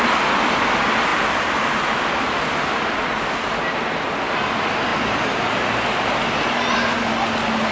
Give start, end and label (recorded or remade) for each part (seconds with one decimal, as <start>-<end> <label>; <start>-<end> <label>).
0.0-7.7 recorded

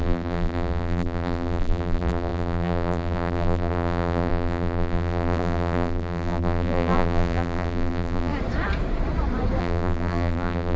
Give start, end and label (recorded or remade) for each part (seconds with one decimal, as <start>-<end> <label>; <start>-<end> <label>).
0.0-8.3 remade; 8.3-9.6 recorded; 9.6-10.8 remade